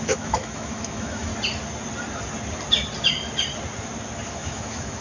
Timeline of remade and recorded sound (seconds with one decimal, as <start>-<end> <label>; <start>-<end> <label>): 0.0-1.3 remade; 1.3-4.3 recorded; 4.3-5.0 remade